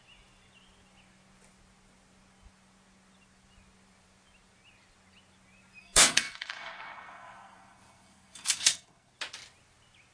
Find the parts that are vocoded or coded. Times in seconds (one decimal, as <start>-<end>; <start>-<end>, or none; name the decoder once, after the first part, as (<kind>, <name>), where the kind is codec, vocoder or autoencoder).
5.8-9.1 (codec, SNAC)